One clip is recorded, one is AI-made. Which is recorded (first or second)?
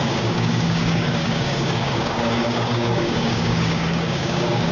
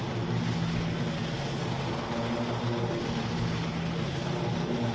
second